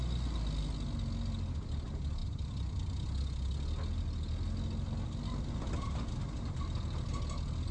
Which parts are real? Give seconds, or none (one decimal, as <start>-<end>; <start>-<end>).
0.0-7.7